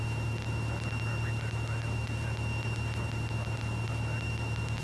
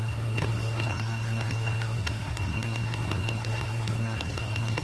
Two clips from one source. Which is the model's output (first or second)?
second